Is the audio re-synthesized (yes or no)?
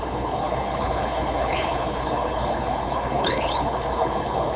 yes